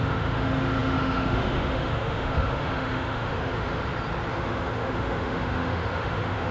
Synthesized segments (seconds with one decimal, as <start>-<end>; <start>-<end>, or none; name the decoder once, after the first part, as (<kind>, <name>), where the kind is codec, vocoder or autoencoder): 0.0-3.8 (autoencoder, DAC-VAE); 4.3-6.5